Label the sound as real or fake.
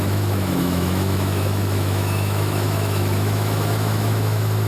fake